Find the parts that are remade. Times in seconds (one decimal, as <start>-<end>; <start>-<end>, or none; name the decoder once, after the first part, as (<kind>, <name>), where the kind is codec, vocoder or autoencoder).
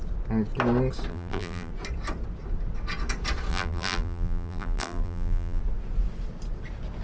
1.1-1.7 (vocoder, BigVGAN v2); 3.5-5.6